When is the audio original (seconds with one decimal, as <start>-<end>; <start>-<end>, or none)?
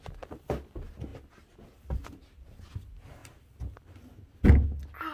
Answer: 0.0-5.1